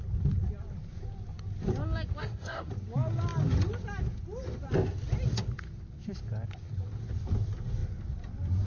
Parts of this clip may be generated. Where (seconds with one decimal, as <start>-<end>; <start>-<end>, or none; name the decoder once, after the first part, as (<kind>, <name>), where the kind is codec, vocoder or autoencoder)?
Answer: 2.2-2.7 (codec, SNAC)